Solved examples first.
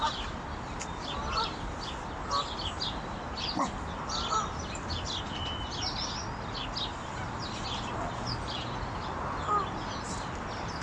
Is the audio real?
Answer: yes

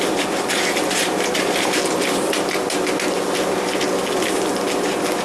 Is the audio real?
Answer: yes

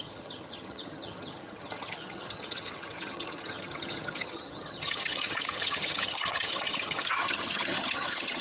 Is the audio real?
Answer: no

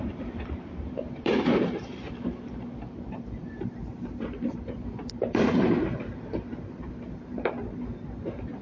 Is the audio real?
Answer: no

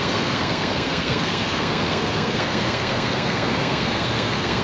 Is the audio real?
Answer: no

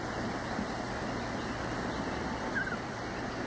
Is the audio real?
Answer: yes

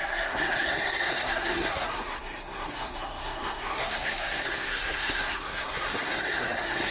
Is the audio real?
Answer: no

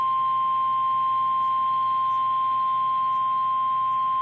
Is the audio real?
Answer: yes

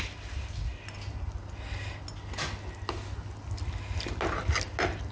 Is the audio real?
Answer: yes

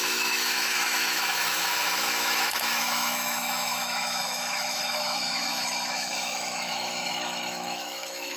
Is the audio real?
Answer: no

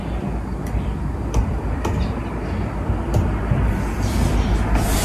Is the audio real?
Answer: yes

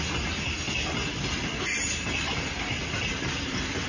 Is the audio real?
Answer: yes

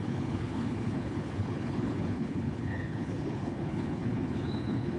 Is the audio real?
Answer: no